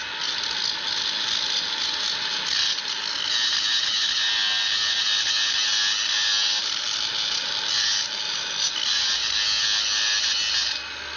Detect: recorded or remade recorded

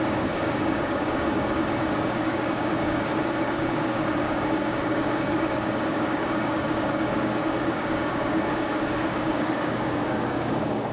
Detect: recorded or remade remade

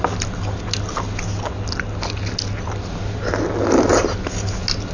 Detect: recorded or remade recorded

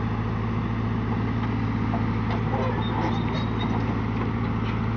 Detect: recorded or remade recorded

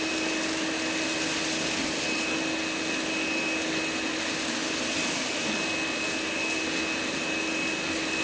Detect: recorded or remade recorded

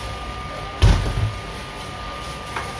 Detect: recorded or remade recorded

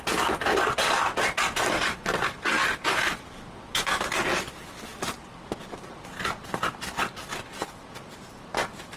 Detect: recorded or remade recorded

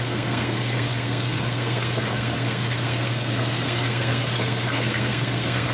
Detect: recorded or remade remade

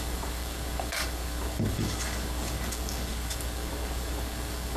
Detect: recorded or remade remade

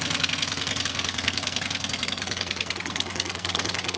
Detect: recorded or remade remade